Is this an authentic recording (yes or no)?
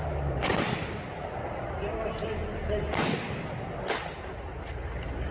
yes